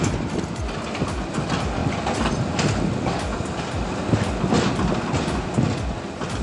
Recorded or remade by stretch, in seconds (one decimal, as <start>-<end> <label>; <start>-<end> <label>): 0.0-6.4 recorded